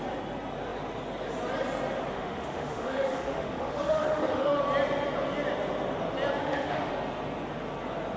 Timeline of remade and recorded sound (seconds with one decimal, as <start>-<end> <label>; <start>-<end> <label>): 0.0-2.1 recorded; 2.1-4.6 remade; 4.6-6.4 recorded; 6.4-6.9 remade; 6.9-8.2 recorded